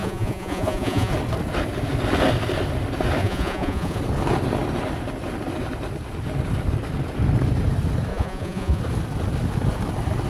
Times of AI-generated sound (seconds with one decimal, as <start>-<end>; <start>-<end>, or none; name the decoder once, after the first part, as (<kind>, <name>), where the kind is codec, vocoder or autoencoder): 0.0-1.1 (vocoder, Vocos); 3.2-4.0; 8.1-8.8